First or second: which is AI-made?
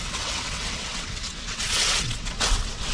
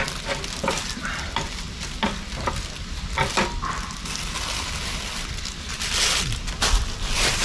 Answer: first